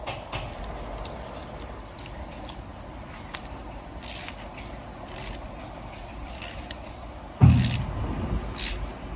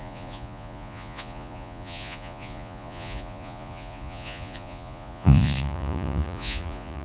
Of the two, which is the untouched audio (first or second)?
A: first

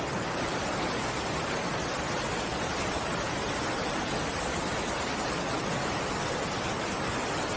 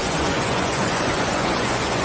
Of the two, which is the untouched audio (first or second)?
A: first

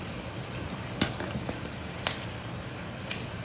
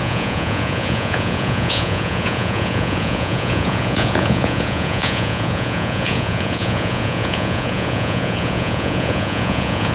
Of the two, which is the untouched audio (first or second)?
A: first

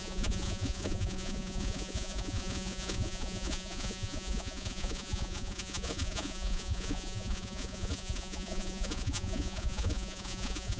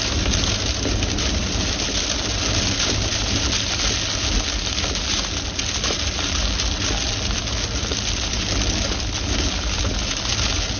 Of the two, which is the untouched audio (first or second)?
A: second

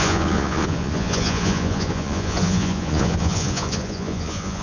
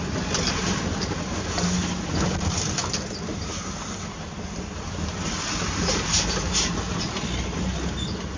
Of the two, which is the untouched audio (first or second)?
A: second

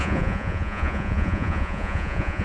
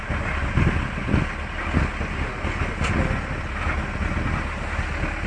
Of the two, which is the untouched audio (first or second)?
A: second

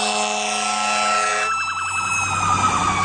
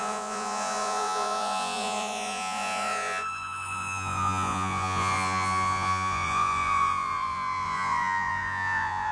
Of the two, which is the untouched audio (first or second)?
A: first